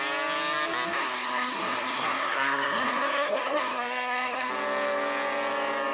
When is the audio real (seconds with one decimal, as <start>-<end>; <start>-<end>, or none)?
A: 0.0-1.0; 4.5-5.9